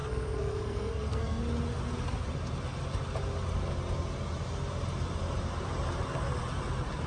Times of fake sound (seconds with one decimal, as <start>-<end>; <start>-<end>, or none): 0.0-1.4